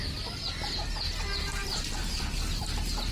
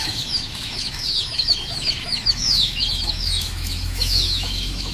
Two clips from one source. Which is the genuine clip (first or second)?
first